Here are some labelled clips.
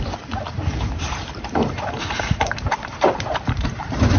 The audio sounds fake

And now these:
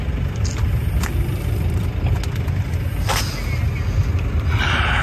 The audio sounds real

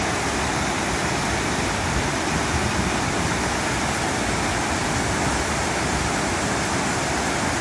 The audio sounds real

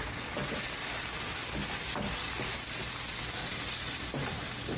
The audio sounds real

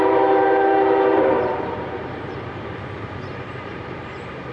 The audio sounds fake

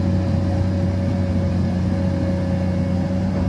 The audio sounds real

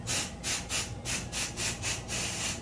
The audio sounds real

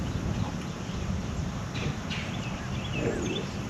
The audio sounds real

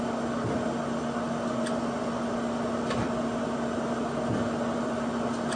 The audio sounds real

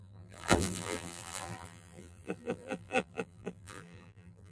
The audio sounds fake